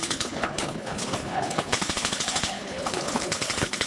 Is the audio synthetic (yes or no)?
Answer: yes